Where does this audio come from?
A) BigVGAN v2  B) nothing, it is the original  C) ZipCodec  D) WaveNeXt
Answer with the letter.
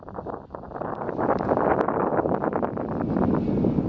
B